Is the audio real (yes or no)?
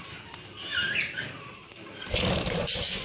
no